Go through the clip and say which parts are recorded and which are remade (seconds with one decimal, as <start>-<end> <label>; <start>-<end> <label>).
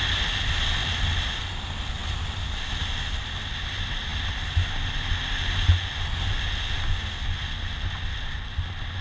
0.0-9.0 recorded